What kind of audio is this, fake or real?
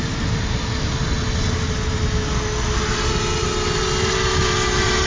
real